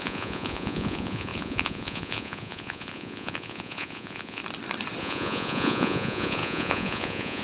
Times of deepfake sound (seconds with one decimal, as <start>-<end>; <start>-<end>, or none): 0.0-4.4; 5.0-7.4